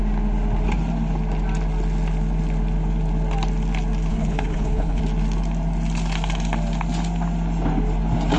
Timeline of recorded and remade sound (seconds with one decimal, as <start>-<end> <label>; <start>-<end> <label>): 0.0-4.1 recorded; 4.1-5.0 remade; 5.0-8.4 recorded

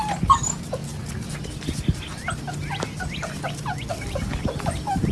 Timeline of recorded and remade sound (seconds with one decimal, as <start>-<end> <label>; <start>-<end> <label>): 0.0-5.1 recorded